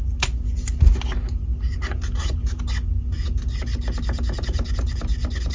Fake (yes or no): no